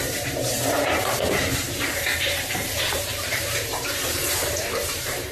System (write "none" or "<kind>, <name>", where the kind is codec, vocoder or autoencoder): vocoder, BigVGAN v2